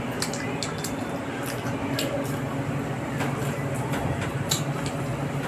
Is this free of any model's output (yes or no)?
yes